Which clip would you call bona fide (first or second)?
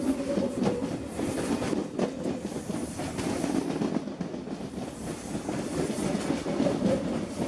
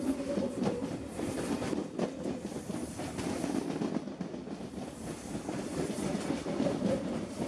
first